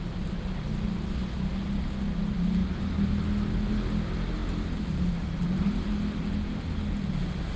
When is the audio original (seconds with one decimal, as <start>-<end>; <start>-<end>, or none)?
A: 0.0-7.6